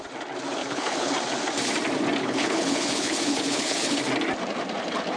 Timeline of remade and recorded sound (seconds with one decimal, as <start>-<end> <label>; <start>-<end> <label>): 0.0-0.6 recorded; 0.6-1.1 remade; 1.1-2.2 recorded; 2.2-4.0 remade; 4.0-5.2 recorded